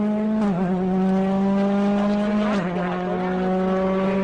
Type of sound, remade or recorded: recorded